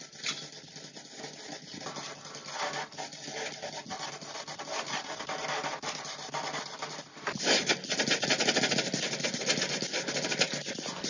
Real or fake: real